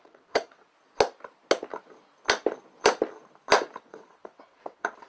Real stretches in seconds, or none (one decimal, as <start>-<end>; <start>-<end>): 0.7-3.8